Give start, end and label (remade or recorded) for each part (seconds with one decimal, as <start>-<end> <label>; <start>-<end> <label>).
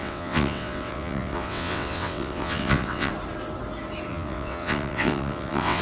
0.0-3.1 remade; 3.1-4.1 recorded; 4.1-5.8 remade